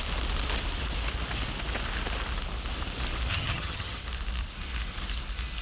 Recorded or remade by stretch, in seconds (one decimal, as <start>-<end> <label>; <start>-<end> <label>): 0.0-3.3 recorded; 3.3-4.0 remade; 4.0-5.6 recorded